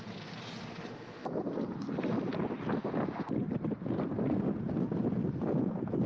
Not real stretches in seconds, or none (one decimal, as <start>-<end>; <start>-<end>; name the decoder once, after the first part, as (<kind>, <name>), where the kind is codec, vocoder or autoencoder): 5.2-6.1 (vocoder, BigVGAN v2)